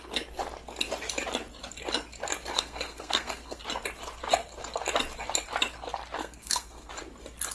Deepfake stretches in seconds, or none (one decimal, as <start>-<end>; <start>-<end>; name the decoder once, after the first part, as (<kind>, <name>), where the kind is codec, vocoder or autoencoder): 2.5-3.6 (codec, SNAC); 6.2-6.9